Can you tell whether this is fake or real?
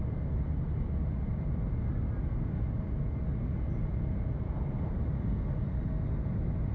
real